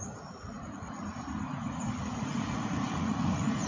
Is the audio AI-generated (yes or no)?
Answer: yes